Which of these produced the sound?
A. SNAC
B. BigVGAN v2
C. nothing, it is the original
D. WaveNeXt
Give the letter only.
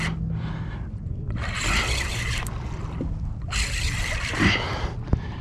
C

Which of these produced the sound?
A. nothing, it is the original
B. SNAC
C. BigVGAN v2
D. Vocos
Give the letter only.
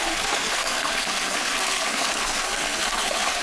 B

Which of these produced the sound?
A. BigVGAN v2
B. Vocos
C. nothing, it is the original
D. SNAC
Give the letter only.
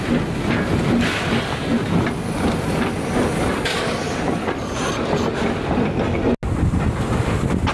C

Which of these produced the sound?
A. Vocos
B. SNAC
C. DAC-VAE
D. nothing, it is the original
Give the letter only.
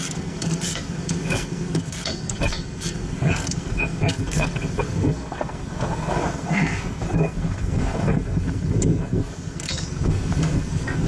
B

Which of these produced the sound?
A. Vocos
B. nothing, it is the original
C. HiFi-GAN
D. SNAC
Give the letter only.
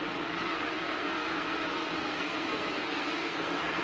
D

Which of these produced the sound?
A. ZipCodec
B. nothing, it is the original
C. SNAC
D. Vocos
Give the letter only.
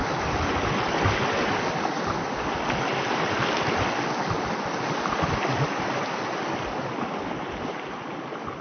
B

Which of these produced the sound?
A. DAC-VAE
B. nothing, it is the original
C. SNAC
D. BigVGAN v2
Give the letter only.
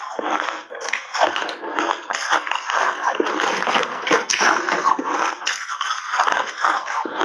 C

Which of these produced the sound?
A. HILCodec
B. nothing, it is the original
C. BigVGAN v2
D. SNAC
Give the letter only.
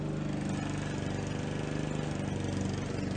B